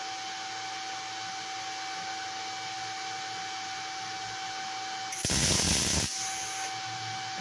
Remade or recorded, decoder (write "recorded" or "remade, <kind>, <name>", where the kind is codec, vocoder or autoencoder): recorded